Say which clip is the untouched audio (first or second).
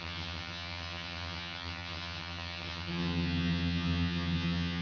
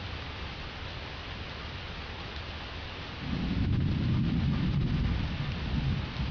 second